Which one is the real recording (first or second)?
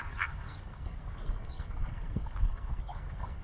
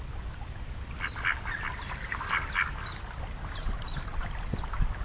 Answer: second